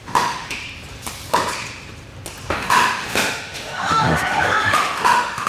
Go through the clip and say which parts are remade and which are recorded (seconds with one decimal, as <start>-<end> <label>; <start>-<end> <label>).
0.0-0.6 remade; 0.6-2.5 recorded; 2.5-5.5 remade